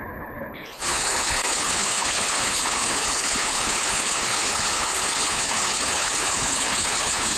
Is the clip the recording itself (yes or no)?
no